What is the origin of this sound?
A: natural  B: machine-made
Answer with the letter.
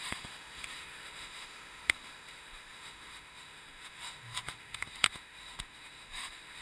B